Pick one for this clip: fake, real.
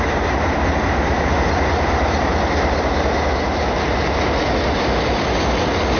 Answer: real